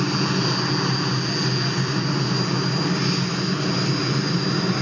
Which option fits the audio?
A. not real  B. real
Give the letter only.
B